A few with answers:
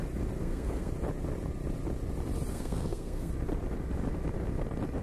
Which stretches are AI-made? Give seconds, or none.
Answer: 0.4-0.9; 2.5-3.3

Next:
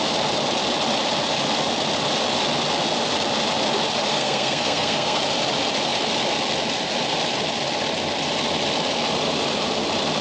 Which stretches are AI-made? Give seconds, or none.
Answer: 4.1-5.2

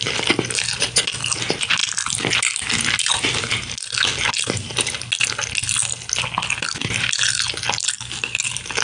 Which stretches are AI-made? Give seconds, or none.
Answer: none

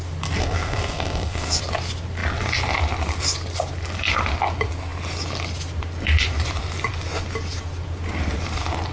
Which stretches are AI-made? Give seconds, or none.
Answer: 0.4-1.6

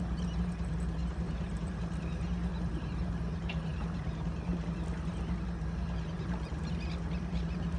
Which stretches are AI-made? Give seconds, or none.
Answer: none

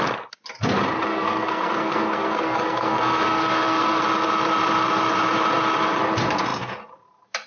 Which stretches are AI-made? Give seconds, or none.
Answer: 1.1-4.0

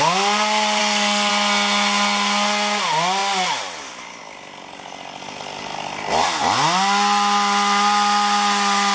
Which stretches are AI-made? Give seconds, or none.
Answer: 0.8-1.3

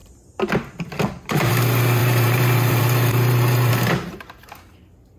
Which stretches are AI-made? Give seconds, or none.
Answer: 2.0-3.7